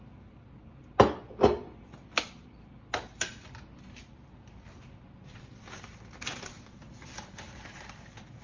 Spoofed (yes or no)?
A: no